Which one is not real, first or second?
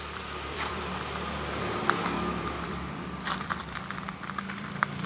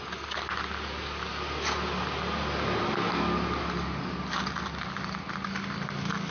first